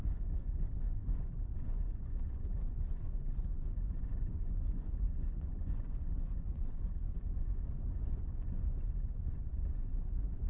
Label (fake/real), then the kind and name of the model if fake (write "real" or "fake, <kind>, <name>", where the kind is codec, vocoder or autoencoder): fake, vocoder, Vocos